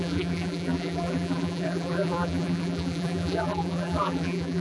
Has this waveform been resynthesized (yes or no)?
yes